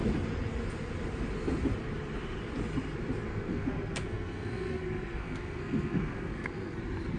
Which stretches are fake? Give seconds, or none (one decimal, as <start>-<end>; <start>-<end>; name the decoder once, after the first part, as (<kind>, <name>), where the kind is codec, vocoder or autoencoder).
3.3-6.8 (codec, SNAC)